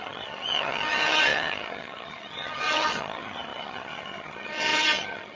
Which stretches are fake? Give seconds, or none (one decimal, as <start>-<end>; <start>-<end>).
0.0-5.4

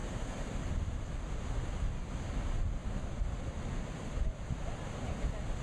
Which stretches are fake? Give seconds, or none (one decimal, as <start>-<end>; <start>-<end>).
none

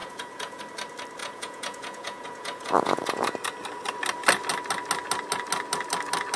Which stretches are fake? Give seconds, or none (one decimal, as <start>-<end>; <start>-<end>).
0.0-0.6; 1.2-3.2

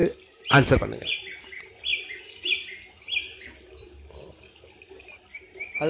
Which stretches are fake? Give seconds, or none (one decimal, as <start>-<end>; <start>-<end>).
0.8-1.9; 5.2-5.9